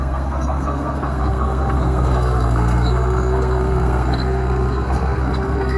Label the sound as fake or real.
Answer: fake